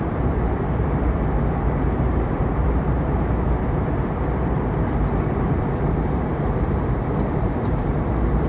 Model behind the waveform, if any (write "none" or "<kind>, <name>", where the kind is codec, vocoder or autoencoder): vocoder, BigVGAN v2